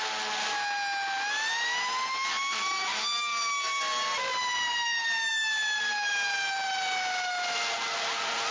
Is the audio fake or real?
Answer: real